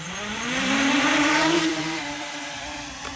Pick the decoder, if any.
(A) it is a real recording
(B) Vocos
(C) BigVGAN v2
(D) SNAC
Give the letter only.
C